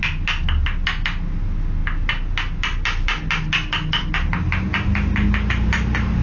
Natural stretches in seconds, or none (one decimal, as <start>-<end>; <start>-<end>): 0.0-6.2

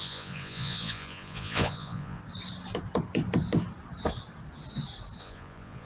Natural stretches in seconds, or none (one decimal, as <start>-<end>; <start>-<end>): 2.2-5.2

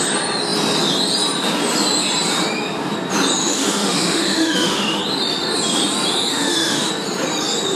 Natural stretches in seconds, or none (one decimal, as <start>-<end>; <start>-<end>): 0.0-3.4; 5.0-6.3; 6.9-7.8

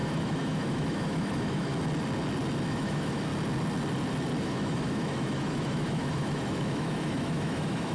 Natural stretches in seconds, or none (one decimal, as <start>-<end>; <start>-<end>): 1.7-2.7; 3.3-4.4

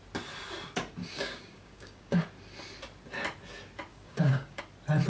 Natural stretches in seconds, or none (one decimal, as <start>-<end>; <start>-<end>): 0.0-1.0; 2.2-3.9; 4.6-5.1

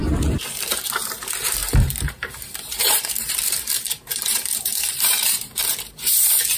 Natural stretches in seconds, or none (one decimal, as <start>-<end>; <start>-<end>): 0.0-1.6; 5.6-6.6